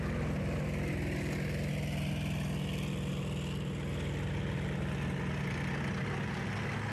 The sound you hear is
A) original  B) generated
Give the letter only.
A